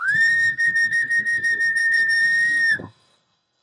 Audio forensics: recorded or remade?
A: remade